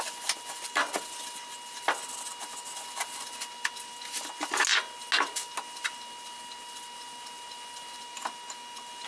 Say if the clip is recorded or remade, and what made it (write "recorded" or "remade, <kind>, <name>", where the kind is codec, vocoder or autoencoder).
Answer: recorded